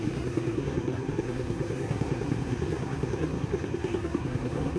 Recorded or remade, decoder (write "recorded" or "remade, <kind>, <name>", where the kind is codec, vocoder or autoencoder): remade, codec, SNAC